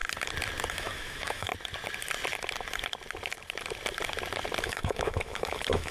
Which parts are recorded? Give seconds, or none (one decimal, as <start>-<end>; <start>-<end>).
0.0-0.7; 1.5-4.6